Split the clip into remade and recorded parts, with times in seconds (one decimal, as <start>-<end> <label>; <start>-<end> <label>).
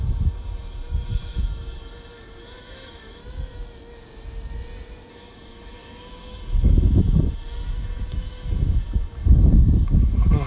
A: 0.0-3.2 remade; 3.2-5.1 recorded; 5.1-10.5 remade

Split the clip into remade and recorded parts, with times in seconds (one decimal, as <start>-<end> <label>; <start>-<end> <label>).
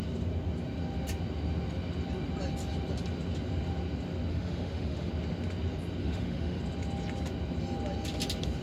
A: 0.0-4.3 recorded; 4.3-5.1 remade; 5.1-6.0 recorded; 6.0-6.6 remade; 6.6-8.6 recorded